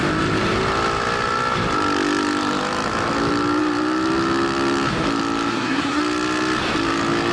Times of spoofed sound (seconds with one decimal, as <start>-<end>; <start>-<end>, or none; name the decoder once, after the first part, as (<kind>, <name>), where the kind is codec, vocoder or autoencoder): 5.5-6.0 (codec, SNAC)